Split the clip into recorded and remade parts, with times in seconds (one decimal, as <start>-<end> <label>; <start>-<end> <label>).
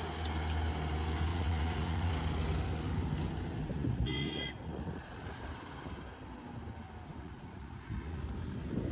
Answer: 0.0-1.3 recorded; 1.3-2.1 remade; 2.1-3.7 recorded; 3.7-5.4 remade; 5.4-7.2 recorded; 7.2-8.2 remade; 8.2-8.9 recorded